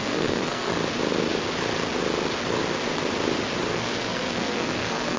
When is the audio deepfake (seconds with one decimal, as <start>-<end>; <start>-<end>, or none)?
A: 0.0-0.7; 3.7-5.2